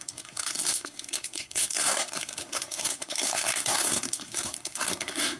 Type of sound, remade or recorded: remade